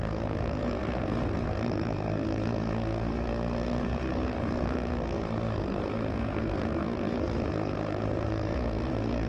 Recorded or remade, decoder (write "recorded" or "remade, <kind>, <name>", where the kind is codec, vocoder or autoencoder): remade, codec, SNAC